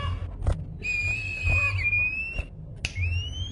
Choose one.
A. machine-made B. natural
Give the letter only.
B